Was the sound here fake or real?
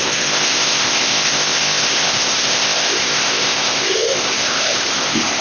fake